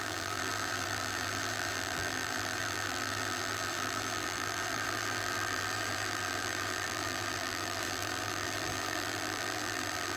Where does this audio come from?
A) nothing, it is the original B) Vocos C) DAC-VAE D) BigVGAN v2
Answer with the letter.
D